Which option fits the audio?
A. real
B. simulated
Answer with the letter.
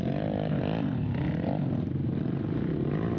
A